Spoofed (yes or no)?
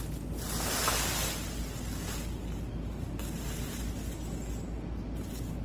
no